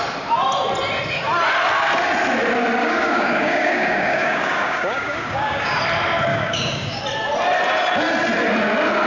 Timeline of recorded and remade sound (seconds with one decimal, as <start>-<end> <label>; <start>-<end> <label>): 0.0-2.8 recorded; 2.8-5.8 remade; 5.8-6.3 recorded; 6.3-7.0 remade; 7.0-9.1 recorded